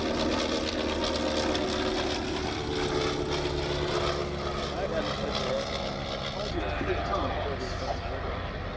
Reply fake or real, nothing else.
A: real